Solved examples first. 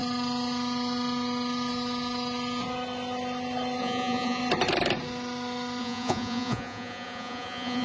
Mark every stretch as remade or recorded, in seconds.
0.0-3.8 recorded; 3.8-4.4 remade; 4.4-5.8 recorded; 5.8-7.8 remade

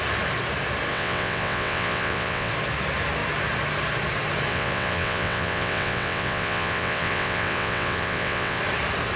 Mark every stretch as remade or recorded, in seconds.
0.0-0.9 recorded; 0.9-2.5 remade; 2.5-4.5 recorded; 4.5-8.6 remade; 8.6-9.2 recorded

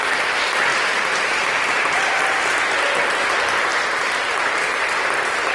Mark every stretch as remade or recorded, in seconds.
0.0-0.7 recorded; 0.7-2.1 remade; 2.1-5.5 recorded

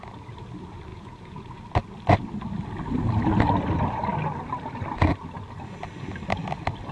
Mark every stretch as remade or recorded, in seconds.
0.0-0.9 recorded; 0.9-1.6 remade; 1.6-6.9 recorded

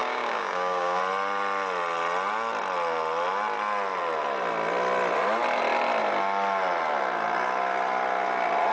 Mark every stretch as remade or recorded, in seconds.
0.0-1.0 remade; 1.0-8.7 recorded

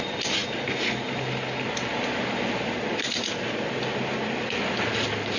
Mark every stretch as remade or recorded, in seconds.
0.0-5.4 recorded

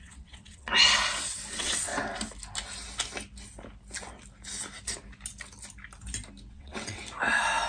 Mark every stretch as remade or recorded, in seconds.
0.0-0.7 remade; 0.7-1.5 recorded; 1.5-1.9 remade; 1.9-6.5 recorded; 6.5-7.0 remade; 7.0-7.7 recorded